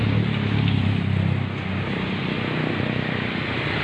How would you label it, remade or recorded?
recorded